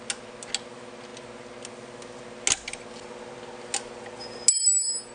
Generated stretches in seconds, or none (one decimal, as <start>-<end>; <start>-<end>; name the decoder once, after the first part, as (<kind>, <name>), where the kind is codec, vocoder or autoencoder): none